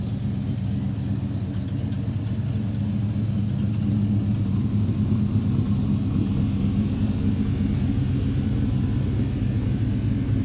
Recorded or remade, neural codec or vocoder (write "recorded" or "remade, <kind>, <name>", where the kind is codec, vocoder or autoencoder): recorded